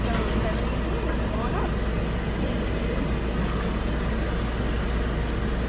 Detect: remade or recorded recorded